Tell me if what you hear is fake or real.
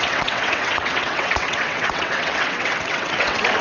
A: fake